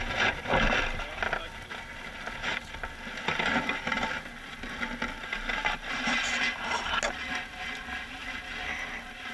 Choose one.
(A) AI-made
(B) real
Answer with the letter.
B